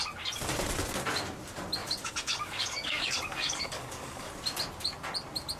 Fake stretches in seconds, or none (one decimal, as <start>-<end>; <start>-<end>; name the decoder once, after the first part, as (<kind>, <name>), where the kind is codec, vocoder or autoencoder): 1.8-4.3 (codec, DAC)